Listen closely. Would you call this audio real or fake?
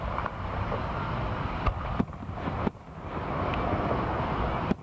real